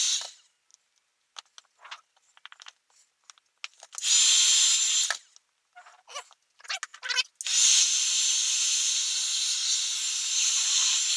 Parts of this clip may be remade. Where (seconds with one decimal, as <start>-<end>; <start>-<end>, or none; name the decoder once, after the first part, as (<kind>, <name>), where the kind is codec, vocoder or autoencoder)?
none